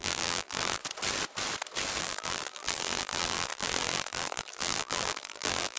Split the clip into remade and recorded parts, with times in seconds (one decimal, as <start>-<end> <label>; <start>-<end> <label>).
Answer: 0.0-0.8 remade; 0.8-2.0 recorded; 2.0-5.8 remade